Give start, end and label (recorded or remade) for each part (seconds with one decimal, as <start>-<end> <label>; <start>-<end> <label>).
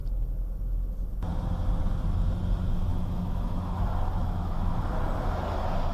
0.0-2.9 recorded; 2.9-3.8 remade; 3.8-4.2 recorded; 4.2-4.9 remade; 4.9-5.9 recorded